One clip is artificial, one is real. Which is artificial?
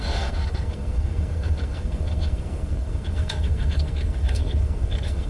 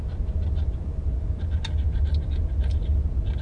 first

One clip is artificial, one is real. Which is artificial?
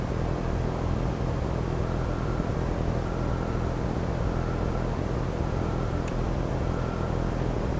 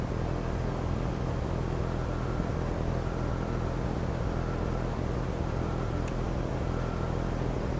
first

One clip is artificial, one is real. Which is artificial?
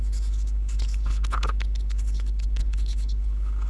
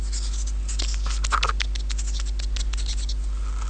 first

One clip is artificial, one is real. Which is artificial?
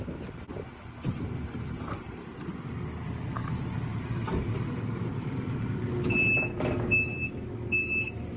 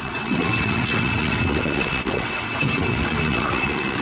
second